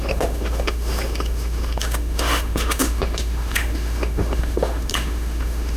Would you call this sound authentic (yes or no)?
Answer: no